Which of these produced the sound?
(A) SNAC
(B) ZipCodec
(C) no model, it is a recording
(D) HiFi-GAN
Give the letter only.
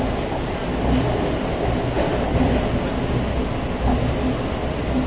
C